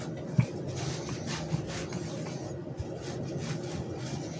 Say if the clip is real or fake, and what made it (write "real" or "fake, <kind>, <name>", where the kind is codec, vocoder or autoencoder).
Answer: real